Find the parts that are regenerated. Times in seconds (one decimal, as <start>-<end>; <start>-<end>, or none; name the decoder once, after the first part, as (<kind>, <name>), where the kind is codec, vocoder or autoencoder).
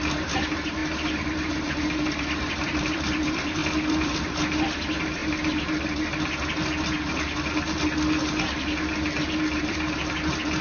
0.0-0.8 (vocoder, BigVGAN v2); 1.5-5.2; 9.6-10.6